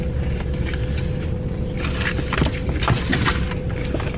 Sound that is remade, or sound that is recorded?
recorded